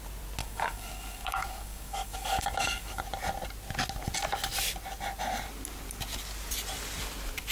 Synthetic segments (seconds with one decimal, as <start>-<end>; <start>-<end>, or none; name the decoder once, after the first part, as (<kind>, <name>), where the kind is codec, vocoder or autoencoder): 0.4-3.0 (codec, DAC)